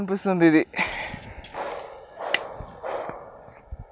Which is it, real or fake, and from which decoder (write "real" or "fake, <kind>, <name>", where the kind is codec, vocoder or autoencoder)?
real